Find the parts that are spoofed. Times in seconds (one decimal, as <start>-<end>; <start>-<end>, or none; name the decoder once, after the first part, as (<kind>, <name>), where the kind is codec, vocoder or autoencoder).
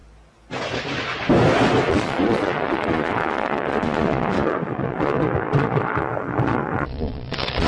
1.9-7.7 (vocoder, Vocos)